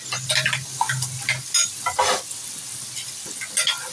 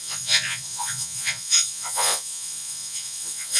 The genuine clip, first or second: first